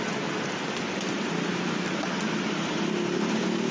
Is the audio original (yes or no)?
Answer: yes